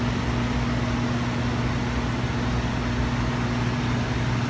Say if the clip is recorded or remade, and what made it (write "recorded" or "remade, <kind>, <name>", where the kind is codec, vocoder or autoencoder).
recorded